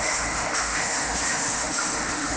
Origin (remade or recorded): remade